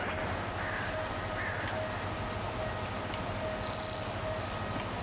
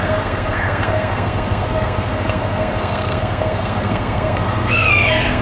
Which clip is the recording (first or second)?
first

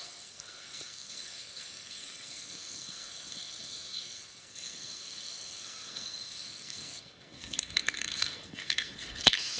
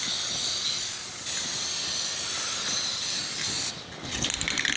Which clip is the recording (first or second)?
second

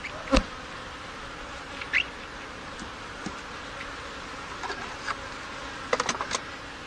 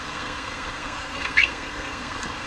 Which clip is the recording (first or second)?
first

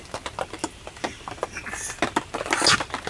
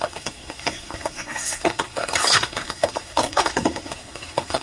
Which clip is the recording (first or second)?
first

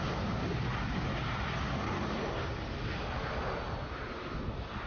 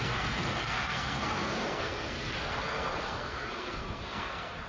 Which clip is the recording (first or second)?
first